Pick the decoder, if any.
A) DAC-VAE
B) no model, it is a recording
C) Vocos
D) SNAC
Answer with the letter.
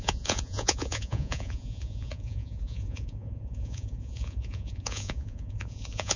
C